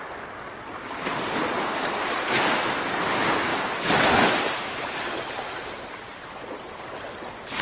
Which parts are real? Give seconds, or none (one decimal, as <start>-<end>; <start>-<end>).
0.0-7.6